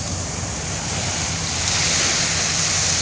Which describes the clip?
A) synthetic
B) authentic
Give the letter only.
B